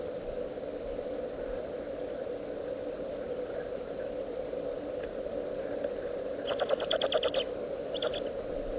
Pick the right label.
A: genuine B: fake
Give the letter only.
A